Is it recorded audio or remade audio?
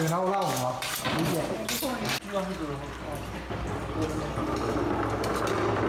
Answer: recorded